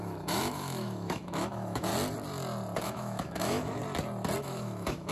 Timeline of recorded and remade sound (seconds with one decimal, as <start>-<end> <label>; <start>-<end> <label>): 0.0-1.9 remade; 1.9-2.8 recorded; 2.8-3.8 remade; 3.8-4.4 recorded; 4.4-5.1 remade